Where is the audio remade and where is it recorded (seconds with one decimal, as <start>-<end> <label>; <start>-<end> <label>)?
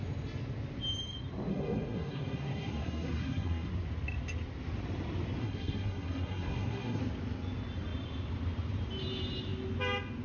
0.0-1.5 recorded; 1.5-3.7 remade; 3.7-5.4 recorded; 5.4-7.0 remade; 7.0-10.2 recorded